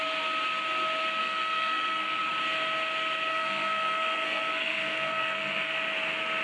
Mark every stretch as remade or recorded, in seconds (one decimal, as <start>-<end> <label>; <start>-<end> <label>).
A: 0.0-1.2 recorded; 1.2-2.2 remade; 2.2-3.3 recorded; 3.3-5.7 remade; 5.7-6.4 recorded